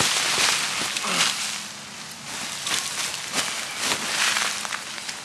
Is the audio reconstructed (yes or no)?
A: no